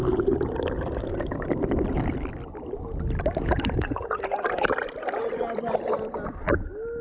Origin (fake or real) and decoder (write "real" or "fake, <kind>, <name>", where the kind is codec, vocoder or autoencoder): real